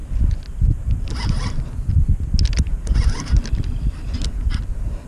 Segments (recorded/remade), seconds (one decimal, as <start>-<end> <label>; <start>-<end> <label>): 0.0-5.1 recorded